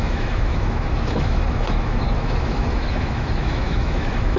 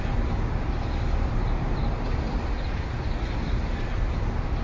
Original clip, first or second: second